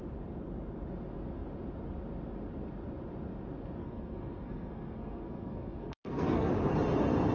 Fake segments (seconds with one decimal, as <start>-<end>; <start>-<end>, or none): 3.8-6.5